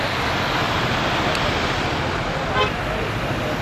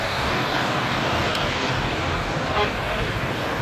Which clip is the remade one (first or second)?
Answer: second